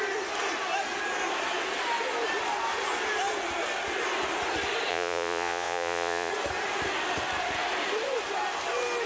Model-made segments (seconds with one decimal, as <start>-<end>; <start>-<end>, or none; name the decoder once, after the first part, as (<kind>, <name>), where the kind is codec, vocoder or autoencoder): 4.9-6.3 (vocoder, Vocos)